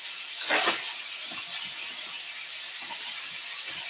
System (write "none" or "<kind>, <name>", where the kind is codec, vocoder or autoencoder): none